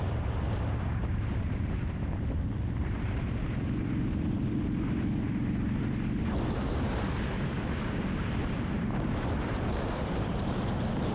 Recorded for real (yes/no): no